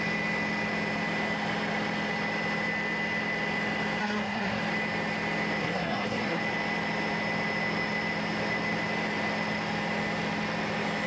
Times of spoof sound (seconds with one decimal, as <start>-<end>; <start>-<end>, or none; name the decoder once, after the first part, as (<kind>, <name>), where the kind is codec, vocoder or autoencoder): 4.0-4.6 (codec, SNAC); 5.6-6.4